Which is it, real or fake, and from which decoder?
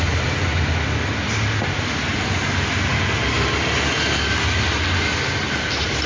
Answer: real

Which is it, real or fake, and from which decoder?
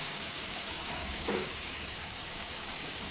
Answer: fake, codec, DAC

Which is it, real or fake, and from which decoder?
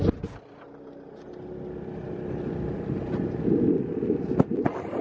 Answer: real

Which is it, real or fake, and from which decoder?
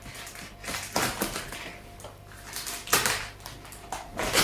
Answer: real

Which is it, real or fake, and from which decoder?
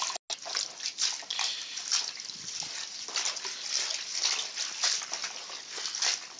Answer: real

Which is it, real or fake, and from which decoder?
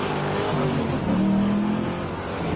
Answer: real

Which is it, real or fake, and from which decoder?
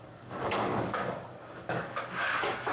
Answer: fake, codec, DAC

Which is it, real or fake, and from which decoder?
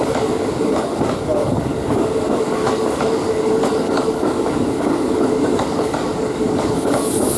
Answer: fake, codec, DAC